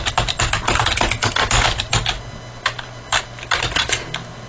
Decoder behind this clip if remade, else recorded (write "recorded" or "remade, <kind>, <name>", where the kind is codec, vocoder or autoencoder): recorded